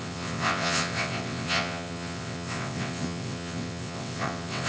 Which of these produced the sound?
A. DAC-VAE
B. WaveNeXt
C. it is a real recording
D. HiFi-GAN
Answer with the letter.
B